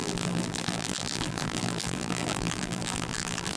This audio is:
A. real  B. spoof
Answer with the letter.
B